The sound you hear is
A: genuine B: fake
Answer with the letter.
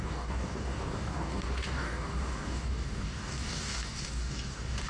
B